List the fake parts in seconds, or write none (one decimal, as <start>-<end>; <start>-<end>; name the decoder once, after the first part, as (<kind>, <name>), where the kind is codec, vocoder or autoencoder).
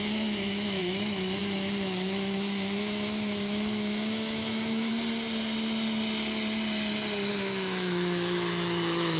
0.0-4.9 (autoencoder, DAC-VAE); 7.3-9.2